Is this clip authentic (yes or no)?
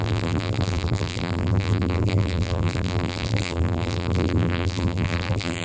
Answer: no